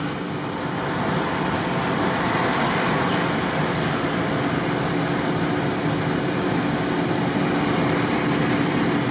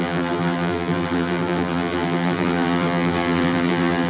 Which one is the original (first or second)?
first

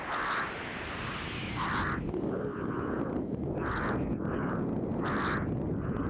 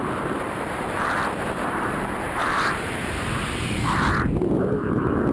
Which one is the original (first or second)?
first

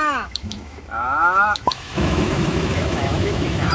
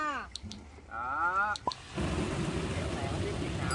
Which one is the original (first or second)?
second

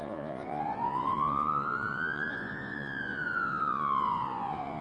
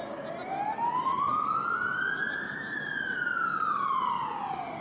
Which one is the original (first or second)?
second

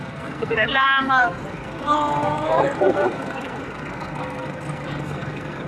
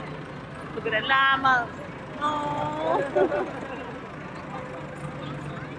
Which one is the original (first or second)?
second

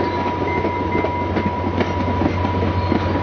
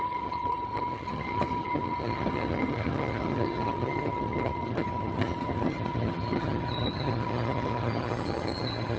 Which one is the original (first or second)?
first